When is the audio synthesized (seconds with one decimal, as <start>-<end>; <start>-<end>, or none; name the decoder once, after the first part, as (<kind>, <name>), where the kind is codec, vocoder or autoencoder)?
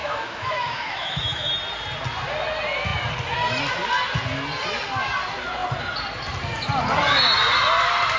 0.0-1.5 (autoencoder, DAC-VAE)